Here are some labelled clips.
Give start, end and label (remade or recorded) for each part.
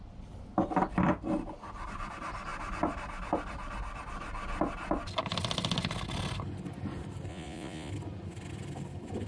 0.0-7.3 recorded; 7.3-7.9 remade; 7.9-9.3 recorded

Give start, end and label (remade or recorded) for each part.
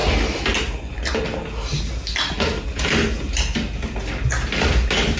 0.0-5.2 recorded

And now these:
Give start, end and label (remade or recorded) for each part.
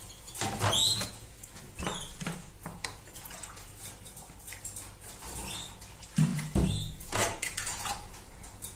0.0-0.8 recorded; 0.8-1.6 remade; 1.6-2.6 recorded; 2.6-3.8 remade; 3.8-6.3 recorded; 6.3-8.8 remade